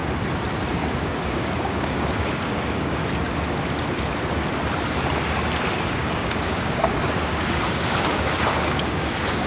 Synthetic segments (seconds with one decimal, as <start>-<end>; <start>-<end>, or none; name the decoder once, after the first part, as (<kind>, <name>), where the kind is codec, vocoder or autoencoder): 0.7-3.0 (codec, DAC); 5.7-9.5